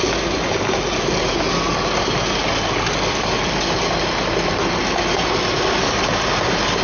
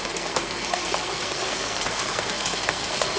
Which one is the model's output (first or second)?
second